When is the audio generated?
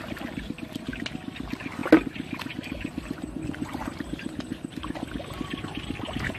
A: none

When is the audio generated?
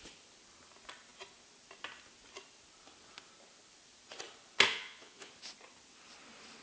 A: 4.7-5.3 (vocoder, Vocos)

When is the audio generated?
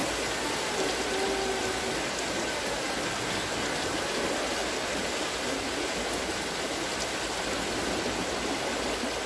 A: 0.0-0.8 (vocoder, BigVGAN v2); 1.6-2.3; 4.6-8.5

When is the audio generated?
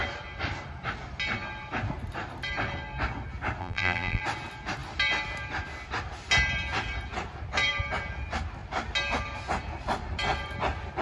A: 3.6-4.2 (vocoder, BigVGAN v2)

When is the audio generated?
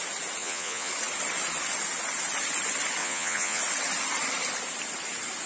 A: 0.4-0.9 (vocoder, Vocos); 3.0-3.6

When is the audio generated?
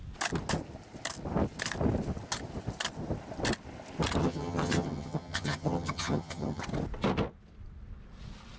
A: 4.2-6.6 (vocoder, HiFi-GAN)